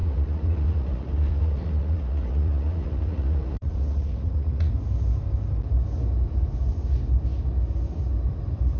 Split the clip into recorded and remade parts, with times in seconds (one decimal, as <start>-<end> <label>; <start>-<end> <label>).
0.0-4.7 remade; 4.7-8.8 recorded